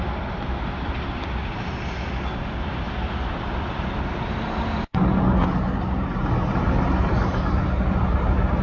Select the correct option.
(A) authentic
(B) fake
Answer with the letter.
A